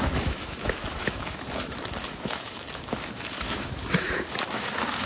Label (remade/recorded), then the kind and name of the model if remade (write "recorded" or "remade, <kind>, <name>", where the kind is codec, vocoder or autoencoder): remade, autoencoder, DAC-VAE